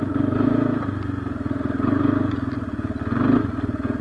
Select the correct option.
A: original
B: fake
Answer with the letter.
A